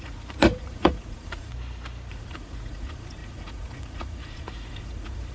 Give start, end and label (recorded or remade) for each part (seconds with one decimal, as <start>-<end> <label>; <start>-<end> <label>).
0.0-1.5 remade; 1.5-2.1 recorded; 2.1-5.3 remade